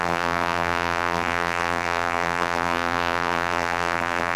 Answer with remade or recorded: remade